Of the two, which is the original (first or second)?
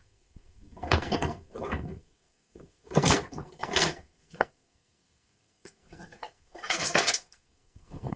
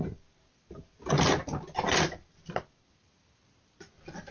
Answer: second